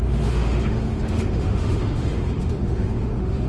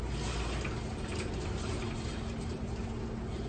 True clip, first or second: second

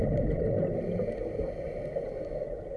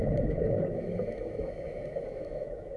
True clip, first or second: first